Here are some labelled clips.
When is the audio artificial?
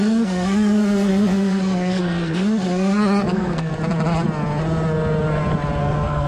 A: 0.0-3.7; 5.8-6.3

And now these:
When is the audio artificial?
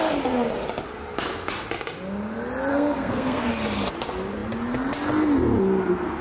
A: 2.7-3.5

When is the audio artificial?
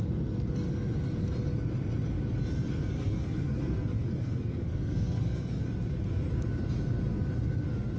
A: 2.9-5.6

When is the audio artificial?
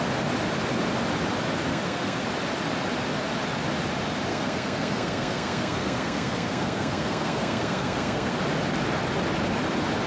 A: 1.7-2.2; 4.3-8.3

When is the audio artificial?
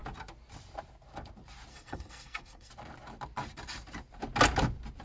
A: 1.7-2.7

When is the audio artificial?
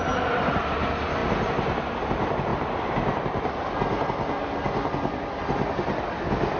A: none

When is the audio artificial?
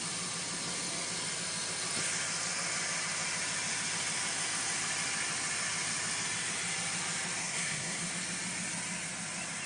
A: 7.4-8.1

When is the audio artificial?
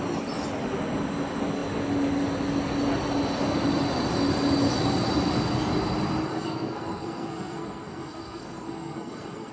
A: 6.3-9.5